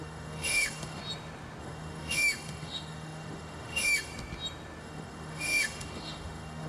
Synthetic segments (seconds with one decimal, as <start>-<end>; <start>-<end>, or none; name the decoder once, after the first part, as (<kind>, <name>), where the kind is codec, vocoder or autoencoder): 0.0-1.0 (autoencoder, DAC-VAE); 1.6-4.1; 4.8-6.7